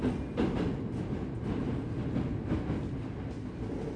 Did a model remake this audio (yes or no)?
no